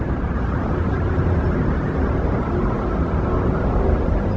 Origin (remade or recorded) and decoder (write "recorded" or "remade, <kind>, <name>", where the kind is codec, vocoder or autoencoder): remade, vocoder, BigVGAN v2